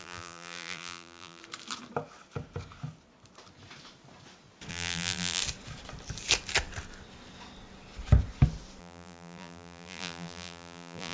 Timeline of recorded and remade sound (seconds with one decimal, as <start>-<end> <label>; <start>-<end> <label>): 0.0-1.4 remade; 1.4-4.7 recorded; 4.7-5.4 remade; 5.4-8.8 recorded; 8.8-11.1 remade